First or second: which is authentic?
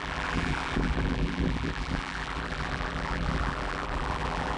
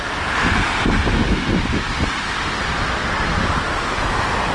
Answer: second